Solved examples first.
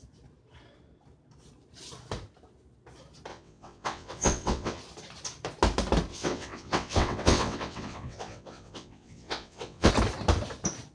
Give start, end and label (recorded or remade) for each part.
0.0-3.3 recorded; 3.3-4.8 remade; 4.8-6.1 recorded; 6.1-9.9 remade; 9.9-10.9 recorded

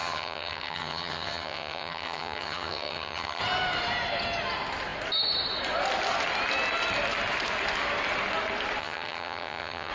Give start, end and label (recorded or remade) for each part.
0.0-3.4 remade; 3.4-8.8 recorded; 8.8-9.9 remade

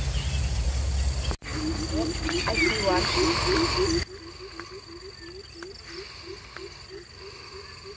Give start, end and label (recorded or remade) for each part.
0.0-8.0 recorded

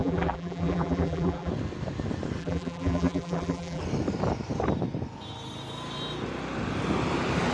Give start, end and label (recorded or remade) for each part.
0.0-1.5 remade; 1.5-2.4 recorded; 2.4-3.8 remade; 3.8-7.5 recorded

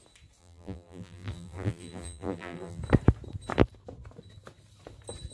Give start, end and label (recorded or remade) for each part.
0.0-0.4 recorded; 0.4-2.8 remade; 2.8-5.3 recorded

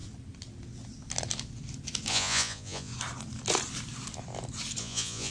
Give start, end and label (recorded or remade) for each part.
0.0-2.1 recorded; 2.1-2.9 remade; 2.9-4.8 recorded; 4.8-5.3 remade

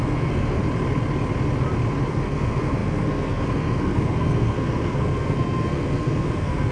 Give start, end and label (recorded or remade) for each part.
0.0-0.6 remade; 0.6-2.1 recorded; 2.1-6.7 remade

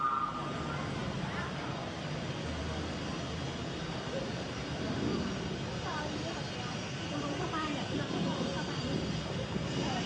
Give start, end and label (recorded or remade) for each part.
0.0-10.1 recorded